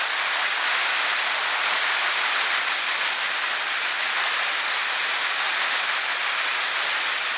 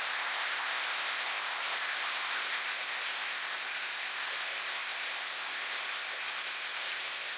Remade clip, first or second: second